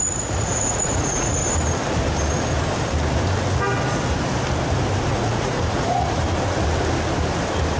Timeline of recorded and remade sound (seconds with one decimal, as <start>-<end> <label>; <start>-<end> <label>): 0.0-1.4 remade; 1.4-5.1 recorded; 5.1-6.2 remade; 6.2-7.8 recorded